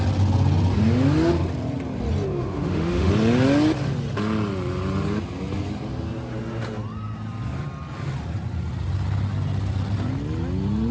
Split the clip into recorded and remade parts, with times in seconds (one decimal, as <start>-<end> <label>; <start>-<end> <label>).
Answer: 0.0-2.3 recorded; 2.3-3.1 remade; 3.1-10.9 recorded